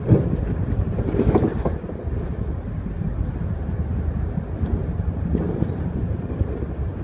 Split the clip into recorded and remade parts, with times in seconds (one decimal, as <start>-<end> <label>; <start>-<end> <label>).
0.0-7.0 recorded